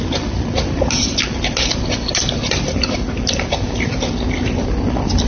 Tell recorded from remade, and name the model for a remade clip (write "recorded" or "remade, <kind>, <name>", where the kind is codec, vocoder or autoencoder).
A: recorded